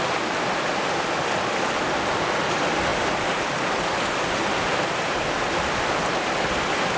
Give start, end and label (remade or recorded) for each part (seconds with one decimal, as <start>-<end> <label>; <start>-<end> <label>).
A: 0.0-7.0 recorded